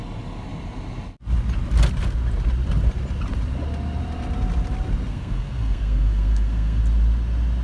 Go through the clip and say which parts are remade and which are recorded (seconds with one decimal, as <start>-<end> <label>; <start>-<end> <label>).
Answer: 0.0-5.1 recorded; 5.1-6.8 remade; 6.8-7.6 recorded